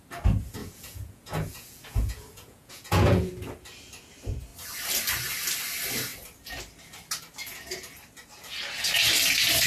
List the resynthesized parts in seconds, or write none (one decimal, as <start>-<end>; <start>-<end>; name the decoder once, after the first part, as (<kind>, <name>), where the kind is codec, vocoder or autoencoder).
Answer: 0.6-3.3 (vocoder, Vocos)